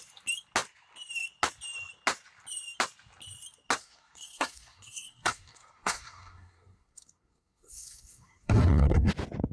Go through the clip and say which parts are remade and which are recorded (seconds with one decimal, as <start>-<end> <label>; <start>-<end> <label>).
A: 0.0-3.8 recorded; 3.8-9.1 remade; 9.1-9.5 recorded